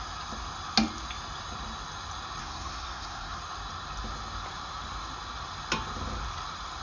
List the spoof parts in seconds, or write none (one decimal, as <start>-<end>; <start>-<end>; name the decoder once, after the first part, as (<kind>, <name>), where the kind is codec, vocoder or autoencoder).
2.4-3.4 (codec, SNAC)